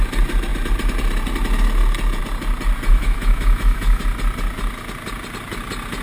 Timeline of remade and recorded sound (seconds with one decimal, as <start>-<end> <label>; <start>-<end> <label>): 0.0-2.9 recorded; 2.9-4.0 remade; 4.0-6.0 recorded